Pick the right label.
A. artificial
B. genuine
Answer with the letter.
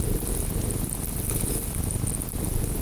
B